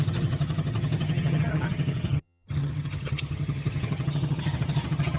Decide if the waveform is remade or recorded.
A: remade